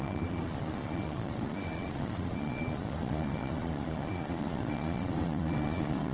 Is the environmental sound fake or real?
fake